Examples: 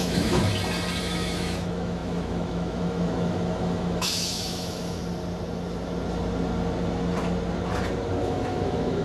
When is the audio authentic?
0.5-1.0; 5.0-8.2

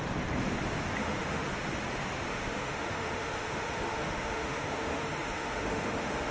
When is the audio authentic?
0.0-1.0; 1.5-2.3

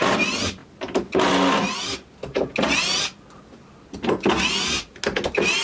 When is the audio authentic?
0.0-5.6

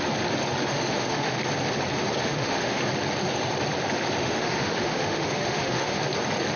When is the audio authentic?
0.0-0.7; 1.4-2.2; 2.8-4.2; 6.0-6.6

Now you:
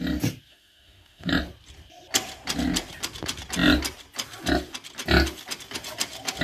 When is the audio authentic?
0.0-0.5; 1.3-6.4